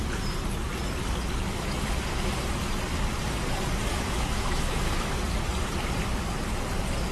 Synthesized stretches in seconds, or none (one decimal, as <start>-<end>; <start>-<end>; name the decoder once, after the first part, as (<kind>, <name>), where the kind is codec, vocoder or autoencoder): 3.9-4.9 (autoencoder, DAC-VAE)